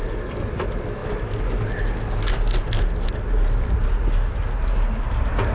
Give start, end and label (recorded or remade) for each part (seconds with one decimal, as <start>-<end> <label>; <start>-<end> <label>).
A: 0.0-5.5 recorded